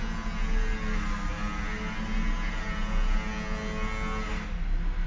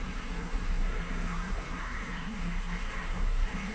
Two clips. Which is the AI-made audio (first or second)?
second